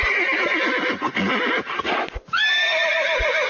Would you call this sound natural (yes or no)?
yes